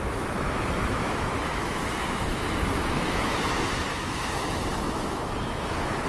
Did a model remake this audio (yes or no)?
yes